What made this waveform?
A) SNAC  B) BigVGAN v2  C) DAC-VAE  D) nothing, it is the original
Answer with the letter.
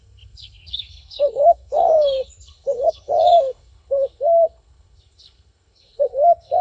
A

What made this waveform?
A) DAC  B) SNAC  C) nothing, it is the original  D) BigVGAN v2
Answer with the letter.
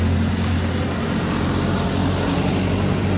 C